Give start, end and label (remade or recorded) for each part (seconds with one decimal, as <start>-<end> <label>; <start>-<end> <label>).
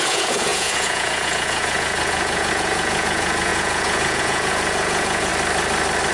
0.0-5.3 remade; 5.3-6.1 recorded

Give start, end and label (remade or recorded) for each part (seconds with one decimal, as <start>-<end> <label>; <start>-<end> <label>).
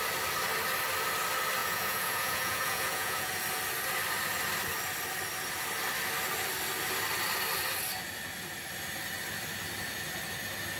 0.0-1.6 recorded; 1.6-3.3 remade; 3.3-10.8 recorded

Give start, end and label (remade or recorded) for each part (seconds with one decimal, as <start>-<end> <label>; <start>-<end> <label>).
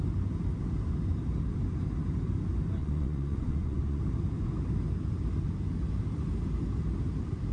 0.0-2.8 recorded; 2.8-4.0 remade; 4.0-7.5 recorded